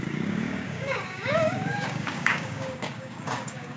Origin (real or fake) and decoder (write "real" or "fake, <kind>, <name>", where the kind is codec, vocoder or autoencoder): fake, codec, DAC